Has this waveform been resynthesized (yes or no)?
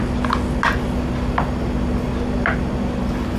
no